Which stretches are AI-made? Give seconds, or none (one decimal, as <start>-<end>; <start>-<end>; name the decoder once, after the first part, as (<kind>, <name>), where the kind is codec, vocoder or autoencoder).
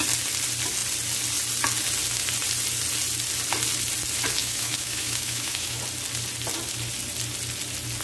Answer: 4.4-5.8 (autoencoder, DAC-VAE)